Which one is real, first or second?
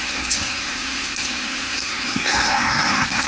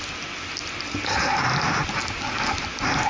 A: second